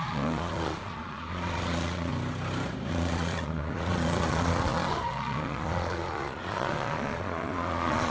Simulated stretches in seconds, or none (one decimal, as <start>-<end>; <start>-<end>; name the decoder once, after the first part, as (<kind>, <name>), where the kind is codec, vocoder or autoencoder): 0.0-2.1 (vocoder, Vocos); 2.9-8.1